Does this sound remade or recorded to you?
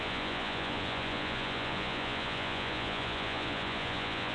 remade